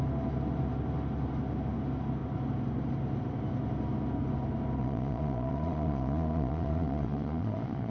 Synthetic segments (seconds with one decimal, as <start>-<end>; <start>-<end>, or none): 4.8-7.9